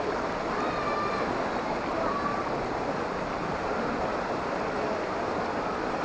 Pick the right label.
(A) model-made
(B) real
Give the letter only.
B